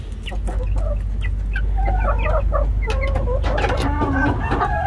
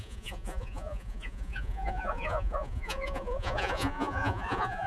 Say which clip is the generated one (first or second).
second